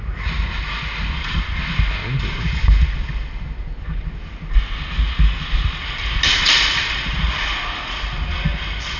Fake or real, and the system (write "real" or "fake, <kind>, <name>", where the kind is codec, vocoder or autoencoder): real